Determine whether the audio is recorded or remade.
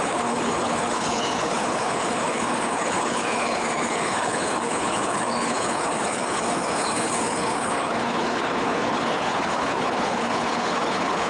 remade